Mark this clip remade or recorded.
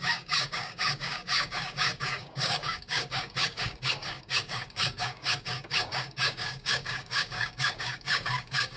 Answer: remade